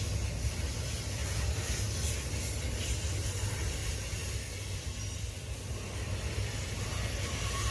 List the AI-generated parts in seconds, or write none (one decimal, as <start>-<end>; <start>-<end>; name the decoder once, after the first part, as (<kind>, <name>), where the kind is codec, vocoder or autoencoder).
none